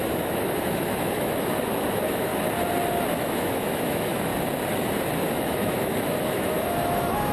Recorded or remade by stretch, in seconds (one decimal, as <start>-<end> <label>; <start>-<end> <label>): 0.0-2.3 remade; 2.3-3.1 recorded; 3.1-4.3 remade; 4.3-5.3 recorded; 5.3-7.3 remade